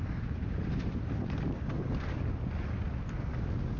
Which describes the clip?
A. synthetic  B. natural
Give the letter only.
B